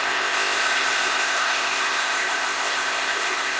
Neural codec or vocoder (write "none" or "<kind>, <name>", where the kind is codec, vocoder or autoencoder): codec, ZipCodec